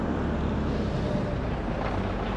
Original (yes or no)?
yes